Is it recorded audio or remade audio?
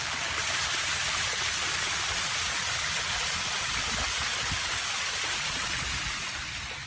recorded